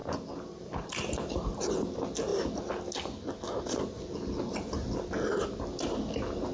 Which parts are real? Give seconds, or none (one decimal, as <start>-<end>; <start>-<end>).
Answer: 1.6-6.5